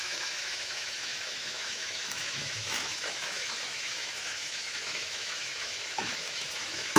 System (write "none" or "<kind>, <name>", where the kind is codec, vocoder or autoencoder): autoencoder, DAC-VAE